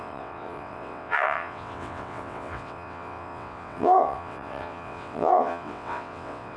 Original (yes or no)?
no